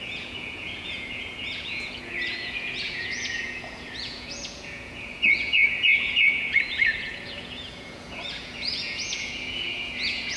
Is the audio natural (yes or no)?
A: no